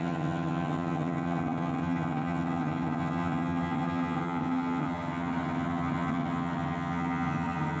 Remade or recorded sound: remade